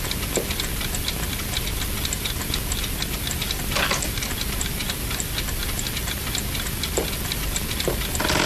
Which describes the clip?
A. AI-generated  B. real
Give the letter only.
B